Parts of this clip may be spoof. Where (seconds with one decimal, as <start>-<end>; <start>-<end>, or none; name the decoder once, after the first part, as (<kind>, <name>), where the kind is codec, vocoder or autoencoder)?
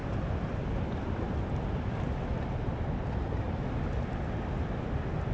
none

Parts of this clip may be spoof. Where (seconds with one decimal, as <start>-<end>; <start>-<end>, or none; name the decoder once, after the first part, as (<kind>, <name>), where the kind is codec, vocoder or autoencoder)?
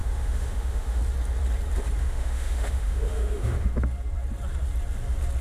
0.0-1.0 (autoencoder, DAC-VAE); 2.0-3.7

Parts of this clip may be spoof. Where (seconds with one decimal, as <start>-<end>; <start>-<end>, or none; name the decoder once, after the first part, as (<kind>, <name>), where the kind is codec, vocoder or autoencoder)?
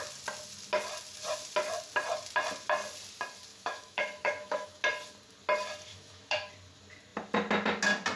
3.5-4.8 (autoencoder, DAC-VAE); 5.9-6.5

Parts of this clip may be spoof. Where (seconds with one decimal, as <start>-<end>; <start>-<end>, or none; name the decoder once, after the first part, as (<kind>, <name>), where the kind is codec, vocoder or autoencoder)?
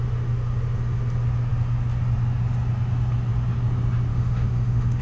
4.1-5.0 (autoencoder, DAC-VAE)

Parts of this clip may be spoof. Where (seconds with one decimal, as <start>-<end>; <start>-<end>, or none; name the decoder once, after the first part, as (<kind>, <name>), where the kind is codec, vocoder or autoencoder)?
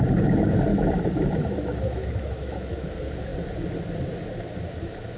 0.7-2.9 (autoencoder, DAC-VAE)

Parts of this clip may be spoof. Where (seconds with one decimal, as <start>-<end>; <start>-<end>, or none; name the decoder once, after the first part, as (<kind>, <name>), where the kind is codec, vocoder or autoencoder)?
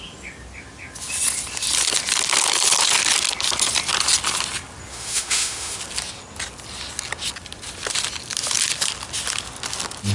4.9-5.8 (autoencoder, DAC-VAE)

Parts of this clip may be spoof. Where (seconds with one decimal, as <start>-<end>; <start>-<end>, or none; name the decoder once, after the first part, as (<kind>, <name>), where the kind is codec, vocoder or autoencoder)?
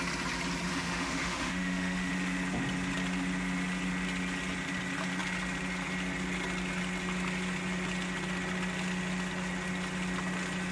0.7-2.1 (autoencoder, DAC-VAE)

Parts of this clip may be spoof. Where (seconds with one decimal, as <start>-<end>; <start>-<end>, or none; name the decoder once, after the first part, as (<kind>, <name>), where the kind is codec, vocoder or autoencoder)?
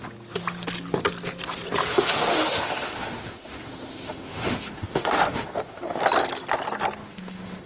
1.9-6.0 (autoencoder, DAC-VAE); 7.0-7.7